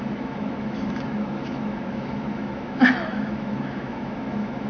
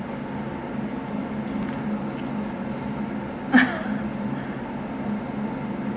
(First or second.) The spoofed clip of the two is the first